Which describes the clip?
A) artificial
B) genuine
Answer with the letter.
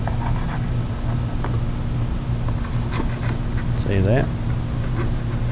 B